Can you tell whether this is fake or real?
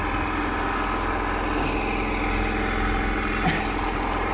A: real